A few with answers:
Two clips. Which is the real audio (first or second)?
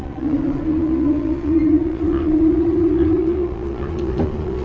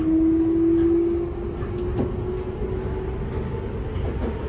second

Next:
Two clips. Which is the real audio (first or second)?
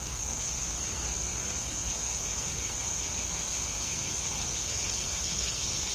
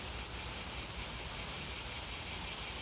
second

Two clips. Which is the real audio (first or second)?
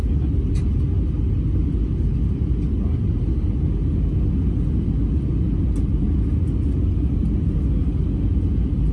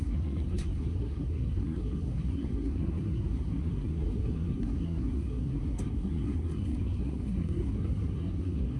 first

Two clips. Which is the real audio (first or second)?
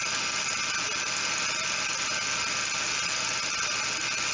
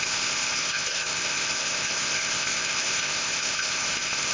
first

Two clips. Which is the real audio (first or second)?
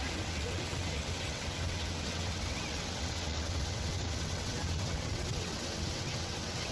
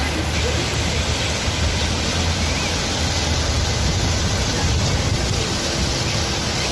second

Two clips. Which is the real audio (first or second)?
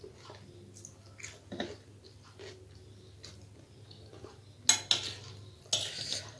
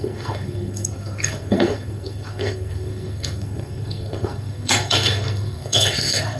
first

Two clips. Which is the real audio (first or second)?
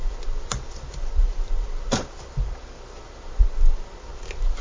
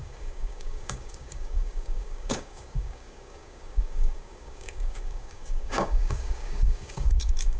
first